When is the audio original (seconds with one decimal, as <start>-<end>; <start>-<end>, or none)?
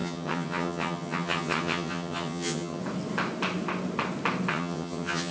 2.8-4.5